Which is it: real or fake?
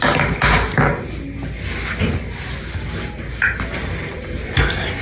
real